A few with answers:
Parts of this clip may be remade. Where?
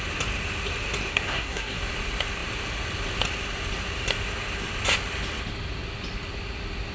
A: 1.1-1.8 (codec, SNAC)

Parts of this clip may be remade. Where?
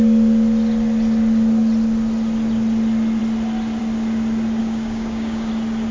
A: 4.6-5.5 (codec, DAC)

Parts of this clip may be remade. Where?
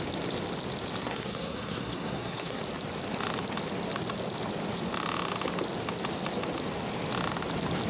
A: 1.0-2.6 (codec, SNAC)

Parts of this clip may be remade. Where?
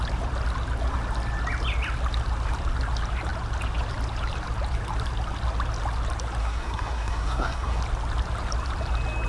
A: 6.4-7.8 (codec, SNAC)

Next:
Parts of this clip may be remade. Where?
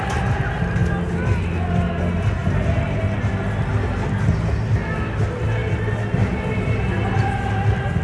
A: none